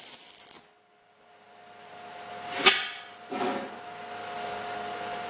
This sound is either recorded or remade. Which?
recorded